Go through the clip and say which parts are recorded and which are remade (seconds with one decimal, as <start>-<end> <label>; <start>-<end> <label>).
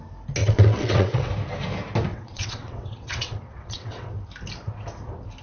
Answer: 0.0-0.4 recorded; 0.4-1.3 remade; 1.3-2.1 recorded; 2.1-4.1 remade; 4.1-5.4 recorded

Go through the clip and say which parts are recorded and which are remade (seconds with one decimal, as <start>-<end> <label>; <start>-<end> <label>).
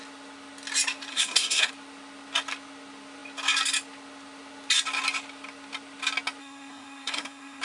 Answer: 0.0-1.1 recorded; 1.1-1.7 remade; 1.7-6.4 recorded; 6.4-7.6 remade